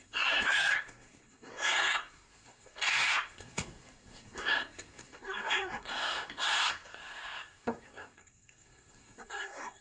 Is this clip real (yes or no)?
no